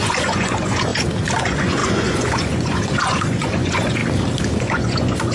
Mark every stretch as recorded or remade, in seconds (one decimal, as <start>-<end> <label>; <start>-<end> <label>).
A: 0.0-0.9 remade; 0.9-1.4 recorded; 1.4-4.0 remade; 4.0-4.6 recorded; 4.6-5.3 remade